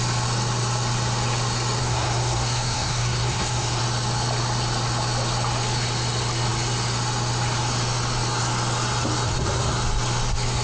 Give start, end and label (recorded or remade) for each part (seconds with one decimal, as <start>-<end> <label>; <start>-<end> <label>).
0.0-1.8 recorded; 1.8-3.8 remade; 3.8-10.6 recorded